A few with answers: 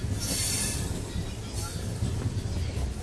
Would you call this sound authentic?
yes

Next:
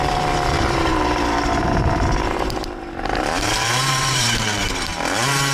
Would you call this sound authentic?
no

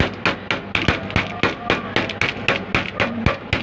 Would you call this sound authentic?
yes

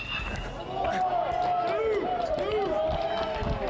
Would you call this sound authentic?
yes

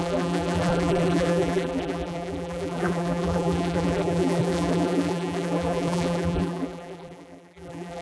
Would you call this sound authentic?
no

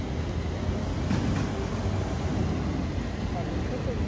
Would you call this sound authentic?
yes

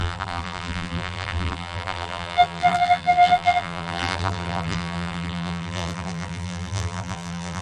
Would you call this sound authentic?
no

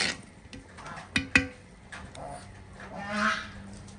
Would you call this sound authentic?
yes